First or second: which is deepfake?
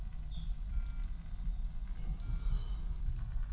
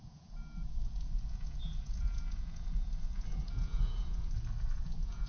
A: second